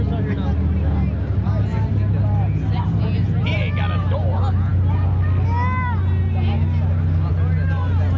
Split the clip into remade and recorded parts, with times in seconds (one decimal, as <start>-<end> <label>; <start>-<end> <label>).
0.0-8.2 recorded